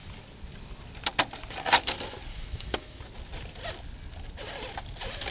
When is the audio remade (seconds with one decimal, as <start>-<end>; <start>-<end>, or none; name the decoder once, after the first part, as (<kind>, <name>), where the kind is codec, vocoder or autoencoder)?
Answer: 2.3-3.0 (autoencoder, DAC-VAE)